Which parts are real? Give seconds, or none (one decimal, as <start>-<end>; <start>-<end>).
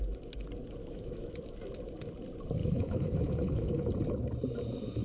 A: 0.0-0.8; 1.4-2.6; 3.9-5.0